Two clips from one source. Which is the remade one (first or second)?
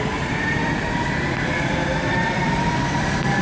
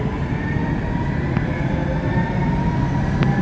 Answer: first